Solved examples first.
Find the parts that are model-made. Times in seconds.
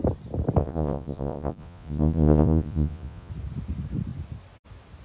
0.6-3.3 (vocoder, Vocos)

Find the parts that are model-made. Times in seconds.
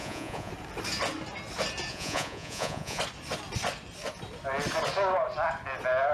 0.0-0.5 (vocoder, Vocos); 1.9-3.0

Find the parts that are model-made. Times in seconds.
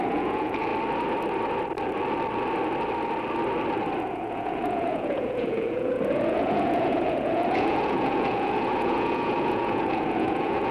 0.0-0.7 (vocoder, Vocos); 4.0-10.7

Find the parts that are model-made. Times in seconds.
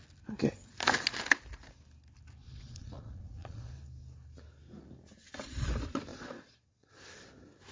2.4-3.7 (vocoder, Vocos); 6.1-6.9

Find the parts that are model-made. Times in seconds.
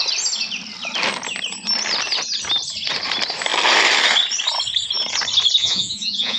5.6-6.4 (vocoder, Vocos)